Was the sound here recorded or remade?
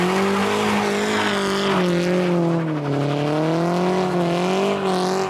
recorded